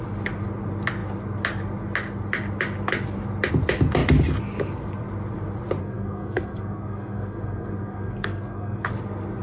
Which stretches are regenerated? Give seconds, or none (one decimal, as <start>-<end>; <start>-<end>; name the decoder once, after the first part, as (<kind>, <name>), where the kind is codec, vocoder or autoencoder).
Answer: 5.8-8.9 (codec, SNAC)